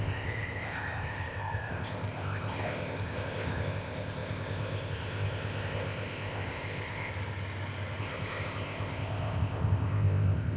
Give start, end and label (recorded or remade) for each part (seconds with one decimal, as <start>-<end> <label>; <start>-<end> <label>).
0.0-7.1 remade; 7.1-8.0 recorded; 8.0-10.6 remade